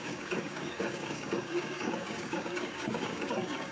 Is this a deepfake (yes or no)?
yes